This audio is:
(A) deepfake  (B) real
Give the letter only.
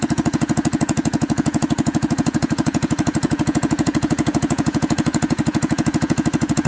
A